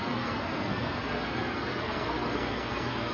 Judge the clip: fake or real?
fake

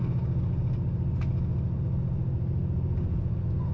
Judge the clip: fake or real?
real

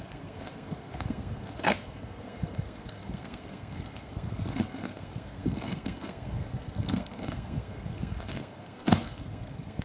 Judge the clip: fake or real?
fake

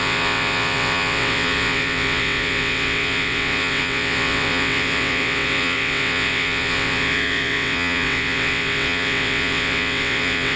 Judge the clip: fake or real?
fake